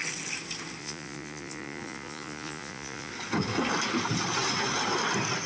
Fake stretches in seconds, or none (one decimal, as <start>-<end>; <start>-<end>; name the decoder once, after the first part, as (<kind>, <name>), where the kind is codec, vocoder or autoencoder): 0.8-3.1 (vocoder, Vocos)